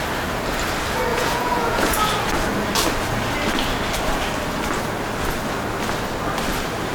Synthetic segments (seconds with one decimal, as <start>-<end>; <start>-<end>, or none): 1.1-2.1